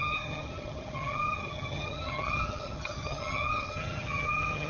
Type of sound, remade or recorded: remade